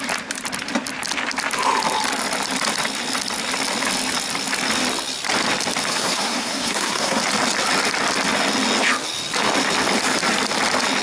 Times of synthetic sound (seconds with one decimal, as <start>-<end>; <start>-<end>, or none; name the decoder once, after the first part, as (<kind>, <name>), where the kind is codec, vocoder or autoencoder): 5.9-7.2 (codec, SNAC)